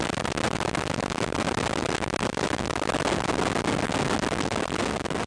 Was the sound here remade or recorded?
recorded